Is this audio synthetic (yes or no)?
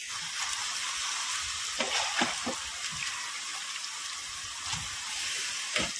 no